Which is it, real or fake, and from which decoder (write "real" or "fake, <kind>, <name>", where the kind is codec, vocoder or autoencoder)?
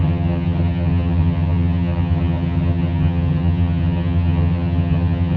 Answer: fake, vocoder, HiFi-GAN